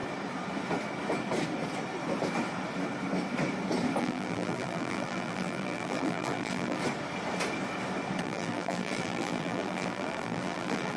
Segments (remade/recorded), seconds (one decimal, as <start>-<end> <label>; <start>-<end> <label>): 0.0-4.0 recorded; 4.0-6.8 remade; 6.8-8.2 recorded; 8.2-11.0 remade